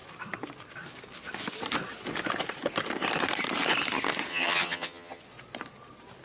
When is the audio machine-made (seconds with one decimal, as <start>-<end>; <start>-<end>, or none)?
4.3-5.2